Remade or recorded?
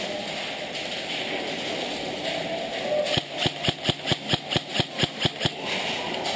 recorded